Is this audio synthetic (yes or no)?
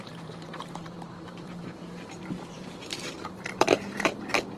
yes